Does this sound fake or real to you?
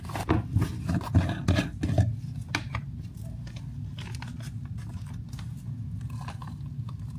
real